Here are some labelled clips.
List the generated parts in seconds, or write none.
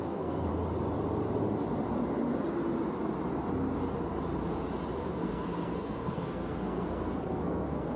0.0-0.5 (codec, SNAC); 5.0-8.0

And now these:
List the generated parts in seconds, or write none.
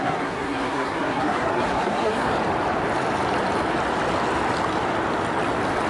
0.0-2.3 (codec, SNAC)